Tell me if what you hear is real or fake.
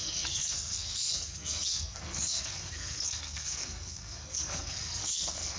fake